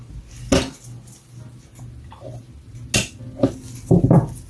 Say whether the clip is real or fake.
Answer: real